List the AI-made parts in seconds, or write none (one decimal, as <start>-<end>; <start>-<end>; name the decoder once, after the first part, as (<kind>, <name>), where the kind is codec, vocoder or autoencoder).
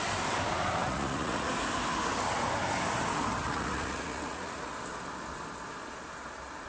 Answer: 0.8-1.5 (vocoder, Vocos); 3.4-4.7